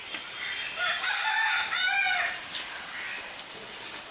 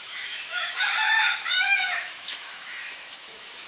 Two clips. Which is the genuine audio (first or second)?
first